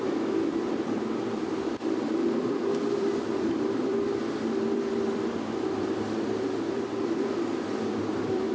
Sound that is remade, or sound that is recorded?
remade